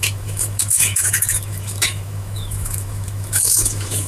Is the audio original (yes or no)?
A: no